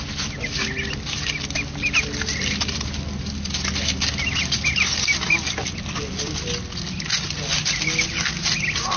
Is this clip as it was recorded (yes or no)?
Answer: yes